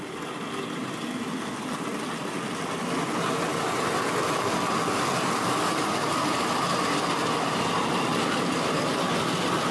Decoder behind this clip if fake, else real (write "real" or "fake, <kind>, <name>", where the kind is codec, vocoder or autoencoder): real